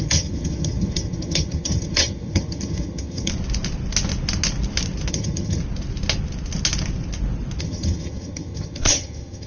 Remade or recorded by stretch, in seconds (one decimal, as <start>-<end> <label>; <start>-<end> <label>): 0.0-3.3 remade; 3.3-5.1 recorded; 5.1-5.6 remade; 5.6-7.6 recorded; 7.6-9.5 remade